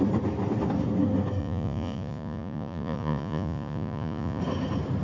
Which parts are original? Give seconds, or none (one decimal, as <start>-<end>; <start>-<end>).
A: 0.0-1.4; 4.4-5.0